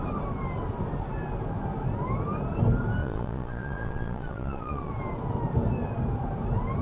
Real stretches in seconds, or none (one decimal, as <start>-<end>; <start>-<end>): 0.0-3.0; 4.9-6.8